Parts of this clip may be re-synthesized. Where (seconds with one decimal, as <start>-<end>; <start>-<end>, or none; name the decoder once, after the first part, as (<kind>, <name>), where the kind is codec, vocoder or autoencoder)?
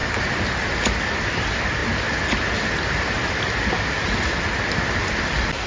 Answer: 0.0-1.8 (vocoder, BigVGAN v2); 5.2-5.7